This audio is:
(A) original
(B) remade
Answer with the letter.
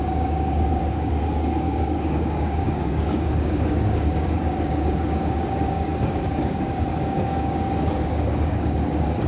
B